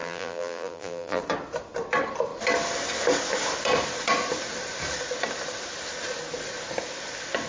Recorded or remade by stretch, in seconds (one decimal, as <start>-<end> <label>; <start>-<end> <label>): 0.0-1.2 remade; 1.2-7.5 recorded